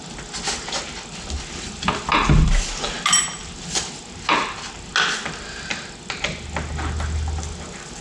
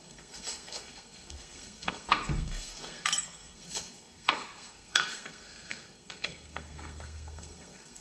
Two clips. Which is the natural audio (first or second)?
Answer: first